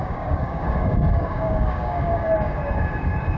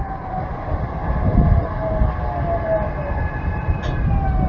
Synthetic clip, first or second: first